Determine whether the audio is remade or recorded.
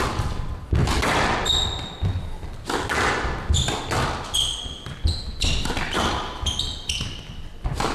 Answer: recorded